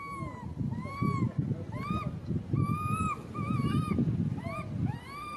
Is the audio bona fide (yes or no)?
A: yes